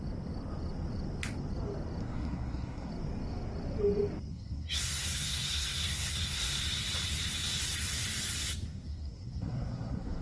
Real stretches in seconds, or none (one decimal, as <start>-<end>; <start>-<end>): 0.0-2.0; 2.9-4.3; 6.6-8.7